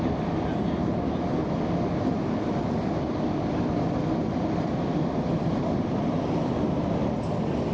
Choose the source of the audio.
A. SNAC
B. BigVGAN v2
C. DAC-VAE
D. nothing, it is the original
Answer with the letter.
D